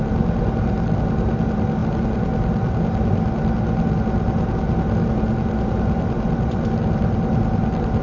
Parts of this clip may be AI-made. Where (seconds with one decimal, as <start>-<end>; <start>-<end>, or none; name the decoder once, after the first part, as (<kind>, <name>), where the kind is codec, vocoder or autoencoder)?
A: none